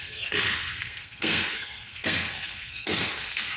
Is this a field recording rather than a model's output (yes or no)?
no